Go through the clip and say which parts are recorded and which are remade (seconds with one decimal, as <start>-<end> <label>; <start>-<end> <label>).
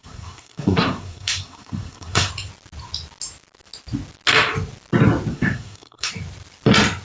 0.0-2.3 remade; 2.3-5.3 recorded; 5.3-6.1 remade; 6.1-7.0 recorded